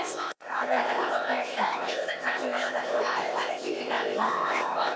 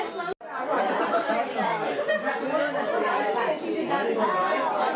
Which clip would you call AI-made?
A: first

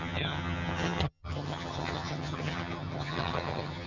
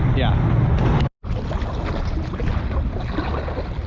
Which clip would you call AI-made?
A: first